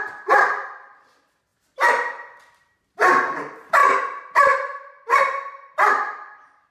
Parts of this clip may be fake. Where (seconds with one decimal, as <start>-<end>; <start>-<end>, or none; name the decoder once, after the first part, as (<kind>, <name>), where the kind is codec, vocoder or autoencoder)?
none